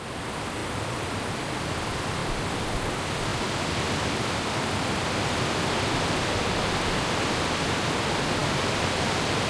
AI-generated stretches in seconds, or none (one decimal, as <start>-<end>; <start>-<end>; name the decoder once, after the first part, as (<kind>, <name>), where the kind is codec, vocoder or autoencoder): 0.6-1.7 (vocoder, BigVGAN v2); 2.2-2.8; 8.4-9.5